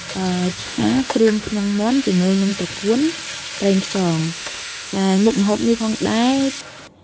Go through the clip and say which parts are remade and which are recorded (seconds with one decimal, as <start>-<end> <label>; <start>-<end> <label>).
0.0-0.5 recorded; 0.5-2.5 remade; 2.5-4.2 recorded; 4.2-5.8 remade; 5.8-7.0 recorded